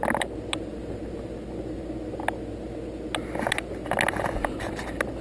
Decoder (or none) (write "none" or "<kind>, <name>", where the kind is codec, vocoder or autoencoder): none